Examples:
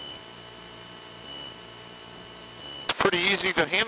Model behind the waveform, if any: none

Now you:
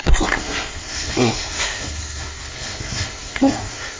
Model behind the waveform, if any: codec, SNAC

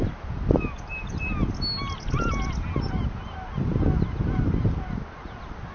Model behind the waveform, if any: none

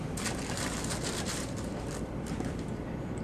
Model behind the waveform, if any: vocoder, BigVGAN v2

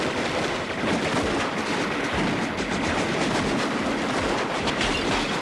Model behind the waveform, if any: none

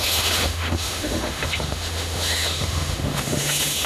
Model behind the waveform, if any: autoencoder, DAC-VAE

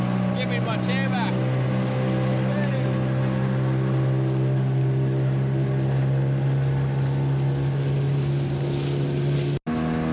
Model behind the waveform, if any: none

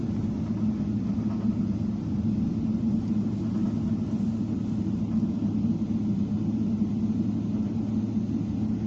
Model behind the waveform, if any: none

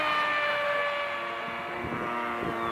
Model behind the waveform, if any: none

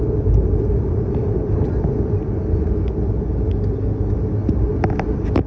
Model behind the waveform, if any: none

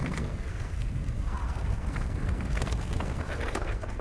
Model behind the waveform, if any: codec, SNAC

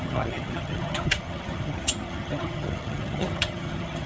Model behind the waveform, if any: vocoder, HiFi-GAN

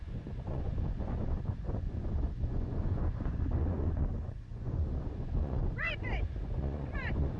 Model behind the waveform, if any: vocoder, Vocos